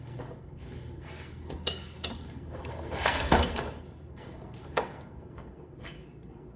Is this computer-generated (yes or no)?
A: yes